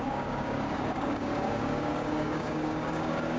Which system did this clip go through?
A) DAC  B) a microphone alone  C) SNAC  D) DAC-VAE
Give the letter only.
A